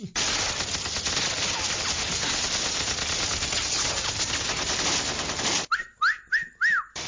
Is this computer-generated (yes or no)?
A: no